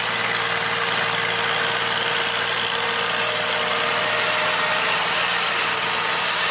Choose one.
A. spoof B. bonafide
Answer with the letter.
B